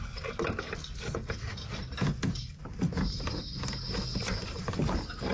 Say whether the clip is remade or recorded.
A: recorded